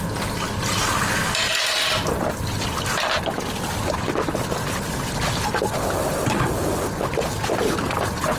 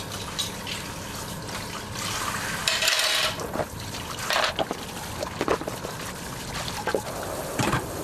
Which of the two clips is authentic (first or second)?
first